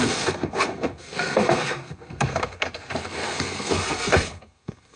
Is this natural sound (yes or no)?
no